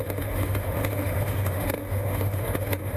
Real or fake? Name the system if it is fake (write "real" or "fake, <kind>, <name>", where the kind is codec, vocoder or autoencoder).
fake, autoencoder, DAC-VAE